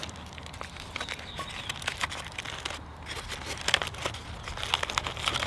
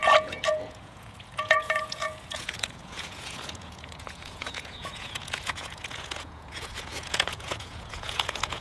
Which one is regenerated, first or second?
second